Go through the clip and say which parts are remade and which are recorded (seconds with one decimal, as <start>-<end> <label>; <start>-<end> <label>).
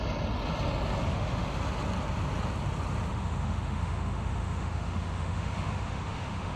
0.0-1.1 recorded; 1.1-1.6 remade; 1.6-3.1 recorded; 3.1-6.6 remade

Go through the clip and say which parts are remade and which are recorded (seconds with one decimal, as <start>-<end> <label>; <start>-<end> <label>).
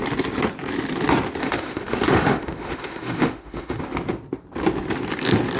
0.0-1.4 recorded; 1.4-3.8 remade; 3.8-5.6 recorded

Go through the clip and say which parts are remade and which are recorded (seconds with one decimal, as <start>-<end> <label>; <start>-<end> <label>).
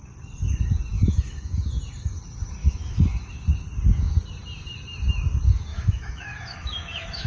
0.0-0.9 recorded; 0.9-1.6 remade; 1.6-2.6 recorded; 2.6-3.3 remade; 3.3-5.7 recorded; 5.7-7.3 remade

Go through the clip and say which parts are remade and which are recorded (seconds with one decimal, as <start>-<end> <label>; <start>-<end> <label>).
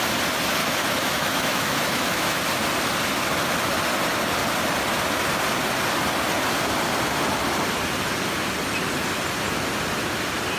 0.0-0.6 recorded; 0.6-2.4 remade; 2.4-10.6 recorded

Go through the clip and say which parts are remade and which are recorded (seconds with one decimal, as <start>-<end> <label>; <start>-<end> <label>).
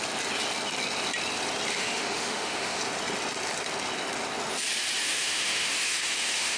0.0-1.7 recorded; 1.7-2.8 remade; 2.8-5.0 recorded; 5.0-6.6 remade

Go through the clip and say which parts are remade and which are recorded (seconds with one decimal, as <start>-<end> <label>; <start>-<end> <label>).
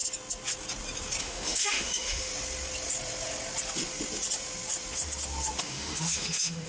0.0-1.2 recorded; 1.2-2.3 remade; 2.3-5.6 recorded; 5.6-6.7 remade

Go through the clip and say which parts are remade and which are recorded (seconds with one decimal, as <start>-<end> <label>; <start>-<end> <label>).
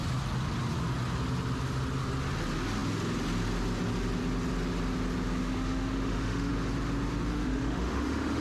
0.0-5.4 recorded; 5.4-6.5 remade; 6.5-7.3 recorded; 7.3-8.4 remade